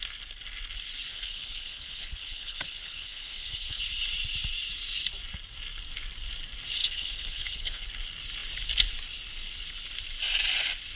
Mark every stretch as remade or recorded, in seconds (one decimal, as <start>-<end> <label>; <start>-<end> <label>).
0.0-1.1 recorded; 1.1-3.8 remade; 3.8-6.8 recorded; 6.8-7.9 remade; 7.9-11.0 recorded